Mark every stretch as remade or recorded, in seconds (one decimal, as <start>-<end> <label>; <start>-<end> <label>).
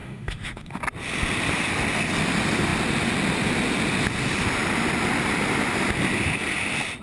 0.0-0.8 remade; 0.8-7.0 recorded